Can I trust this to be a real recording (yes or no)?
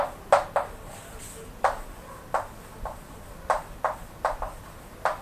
yes